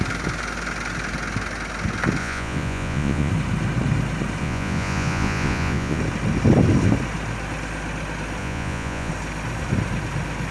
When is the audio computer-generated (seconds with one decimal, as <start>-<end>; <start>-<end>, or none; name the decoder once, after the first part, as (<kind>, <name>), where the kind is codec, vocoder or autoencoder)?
2.2-3.3 (vocoder, Vocos); 4.4-6.0; 8.4-9.1